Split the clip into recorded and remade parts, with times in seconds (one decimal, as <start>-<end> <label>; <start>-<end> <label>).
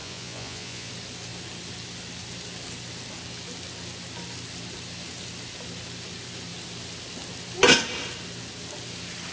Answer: 0.0-0.9 remade; 0.9-9.3 recorded